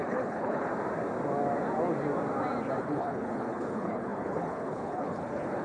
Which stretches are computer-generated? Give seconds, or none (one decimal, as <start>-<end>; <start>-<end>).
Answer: 0.0-0.7; 2.8-5.6